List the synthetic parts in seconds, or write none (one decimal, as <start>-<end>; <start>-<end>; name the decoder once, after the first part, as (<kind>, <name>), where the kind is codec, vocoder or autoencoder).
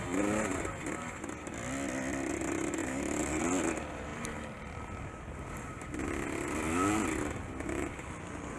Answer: 2.8-3.4 (vocoder, BigVGAN v2)